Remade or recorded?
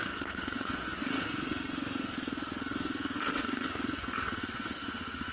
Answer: remade